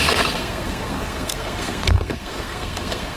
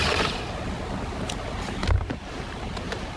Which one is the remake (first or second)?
first